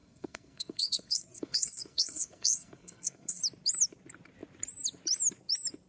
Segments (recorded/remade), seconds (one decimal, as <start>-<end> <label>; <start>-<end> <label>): 0.0-3.4 remade; 3.4-5.9 recorded